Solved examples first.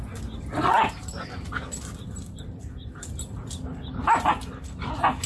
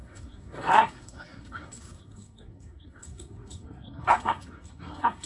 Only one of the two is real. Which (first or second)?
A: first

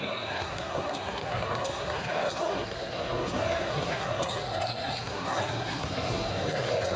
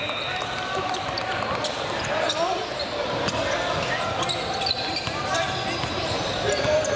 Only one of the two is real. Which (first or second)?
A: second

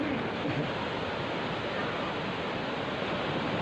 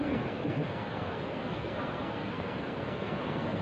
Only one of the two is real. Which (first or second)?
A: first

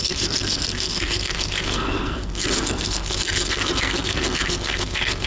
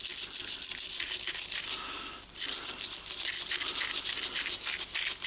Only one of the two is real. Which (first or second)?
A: second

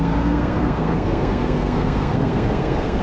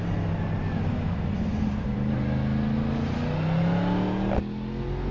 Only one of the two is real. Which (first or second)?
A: second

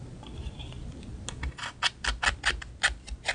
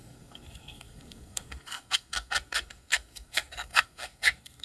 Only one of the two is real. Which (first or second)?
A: first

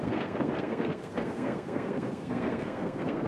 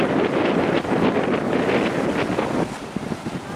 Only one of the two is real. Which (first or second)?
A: second